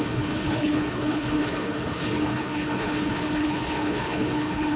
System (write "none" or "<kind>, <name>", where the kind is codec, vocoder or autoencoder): codec, HILCodec